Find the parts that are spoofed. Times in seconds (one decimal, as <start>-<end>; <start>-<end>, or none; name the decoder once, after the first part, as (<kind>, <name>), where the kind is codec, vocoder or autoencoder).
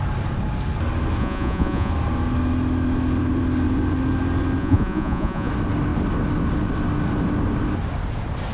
1.2-1.9 (vocoder, Vocos); 4.6-5.5